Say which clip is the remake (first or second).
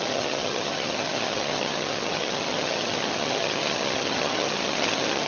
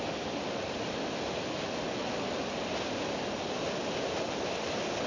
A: first